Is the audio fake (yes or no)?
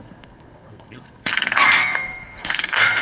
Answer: yes